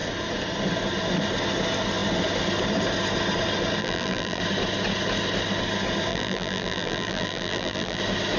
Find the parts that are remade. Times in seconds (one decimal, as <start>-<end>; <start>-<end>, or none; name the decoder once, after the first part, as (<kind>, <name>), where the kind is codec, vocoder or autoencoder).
3.8-4.4 (vocoder, BigVGAN v2); 6.1-8.0